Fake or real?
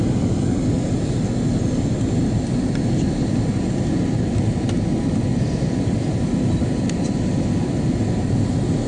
real